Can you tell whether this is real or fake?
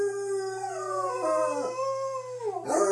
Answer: real